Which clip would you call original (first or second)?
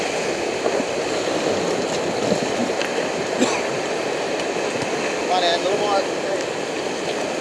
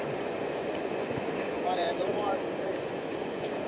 first